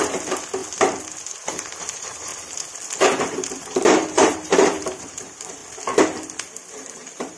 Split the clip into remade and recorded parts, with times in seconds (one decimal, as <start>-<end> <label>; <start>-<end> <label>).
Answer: 0.0-0.6 remade; 0.6-1.2 recorded; 1.2-2.3 remade; 2.3-3.2 recorded; 3.2-5.6 remade; 5.6-6.7 recorded; 6.7-7.4 remade